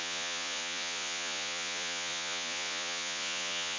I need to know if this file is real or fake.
fake